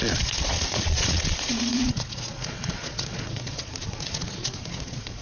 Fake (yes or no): yes